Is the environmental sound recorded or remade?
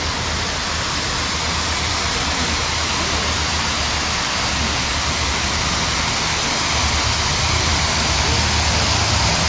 recorded